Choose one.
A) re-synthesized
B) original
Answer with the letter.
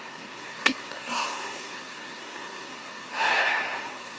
A